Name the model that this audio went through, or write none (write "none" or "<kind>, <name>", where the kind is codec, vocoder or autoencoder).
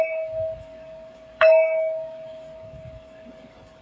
codec, DAC